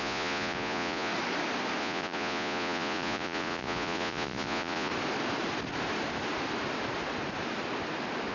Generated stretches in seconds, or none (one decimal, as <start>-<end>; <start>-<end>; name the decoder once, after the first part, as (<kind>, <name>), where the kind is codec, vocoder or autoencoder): 0.0-1.1 (vocoder, Vocos); 1.8-4.9

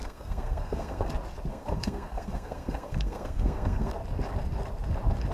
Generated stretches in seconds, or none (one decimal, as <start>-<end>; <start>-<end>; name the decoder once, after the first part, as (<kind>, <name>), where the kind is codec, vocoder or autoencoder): 0.0-1.1 (codec, SNAC); 1.5-3.9

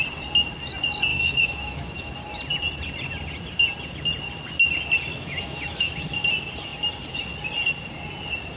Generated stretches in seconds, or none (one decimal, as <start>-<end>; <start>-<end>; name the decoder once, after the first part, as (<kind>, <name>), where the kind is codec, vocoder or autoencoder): 1.1-2.1 (autoencoder, DAC-VAE); 5.1-5.9

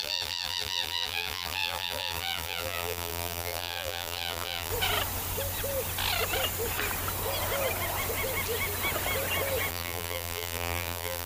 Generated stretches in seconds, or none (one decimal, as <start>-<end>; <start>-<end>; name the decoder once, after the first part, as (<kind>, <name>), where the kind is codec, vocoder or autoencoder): 0.0-4.7 (vocoder, BigVGAN v2); 9.7-11.3